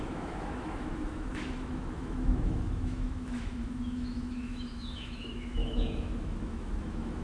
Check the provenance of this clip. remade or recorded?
remade